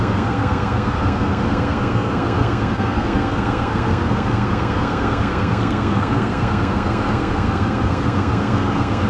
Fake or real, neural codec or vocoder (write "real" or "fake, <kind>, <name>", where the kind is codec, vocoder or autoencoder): fake, codec, SNAC